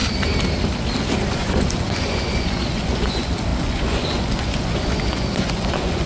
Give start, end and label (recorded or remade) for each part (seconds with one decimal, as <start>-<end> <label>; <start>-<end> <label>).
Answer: 0.0-1.3 recorded; 1.3-6.1 remade